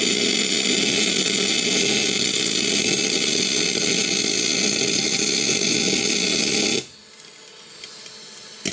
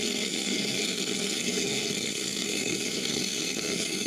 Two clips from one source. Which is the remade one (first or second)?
second